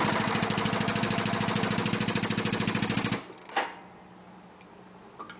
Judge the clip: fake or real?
real